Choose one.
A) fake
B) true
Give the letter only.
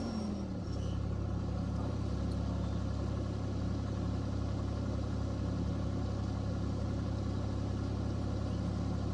B